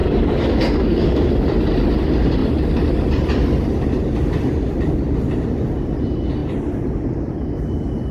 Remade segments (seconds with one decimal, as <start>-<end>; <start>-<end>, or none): 0.0-1.3